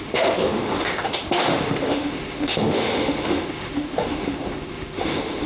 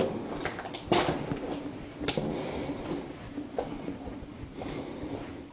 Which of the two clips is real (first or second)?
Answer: second